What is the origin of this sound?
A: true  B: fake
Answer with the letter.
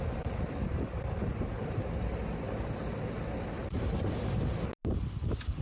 A